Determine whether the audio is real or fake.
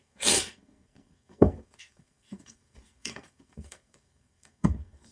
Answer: fake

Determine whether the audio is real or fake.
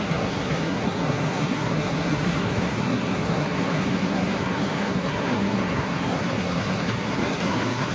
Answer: fake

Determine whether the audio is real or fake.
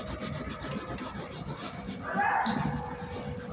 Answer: real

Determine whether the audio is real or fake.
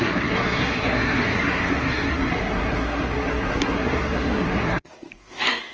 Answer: fake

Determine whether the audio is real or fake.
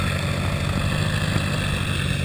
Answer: real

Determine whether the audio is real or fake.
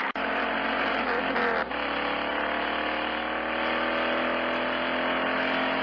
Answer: real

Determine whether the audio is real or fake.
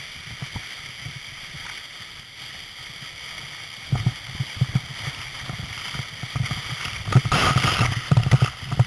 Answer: real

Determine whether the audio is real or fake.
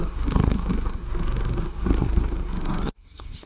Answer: fake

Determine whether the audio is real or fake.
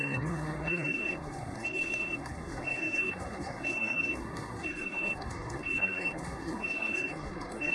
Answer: fake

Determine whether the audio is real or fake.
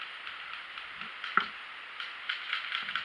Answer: real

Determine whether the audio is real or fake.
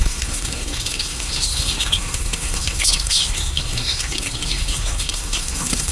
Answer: fake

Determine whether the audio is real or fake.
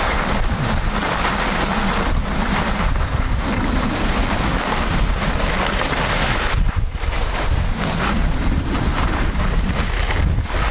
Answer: real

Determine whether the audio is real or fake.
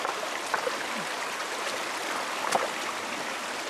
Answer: real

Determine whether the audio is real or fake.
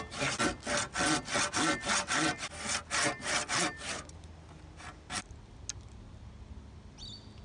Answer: real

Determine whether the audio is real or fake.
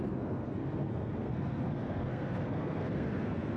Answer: fake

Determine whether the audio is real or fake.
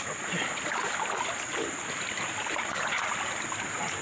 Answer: real